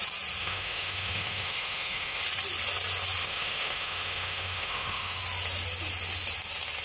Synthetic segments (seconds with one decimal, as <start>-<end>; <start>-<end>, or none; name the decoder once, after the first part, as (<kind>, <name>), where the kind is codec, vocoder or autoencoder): 0.4-2.2 (autoencoder, DAC-VAE); 3.2-5.2